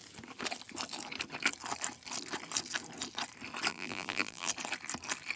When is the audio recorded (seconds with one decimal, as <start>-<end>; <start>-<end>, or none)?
0.0-3.7; 4.5-5.4